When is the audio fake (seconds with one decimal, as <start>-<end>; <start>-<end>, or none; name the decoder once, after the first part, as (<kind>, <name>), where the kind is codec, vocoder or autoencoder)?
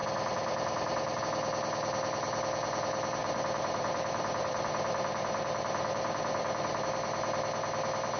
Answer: 0.0-1.2 (vocoder, BigVGAN v2); 3.2-6.8